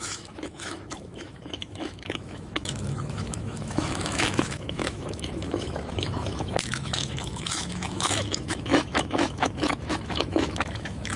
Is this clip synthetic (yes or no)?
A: yes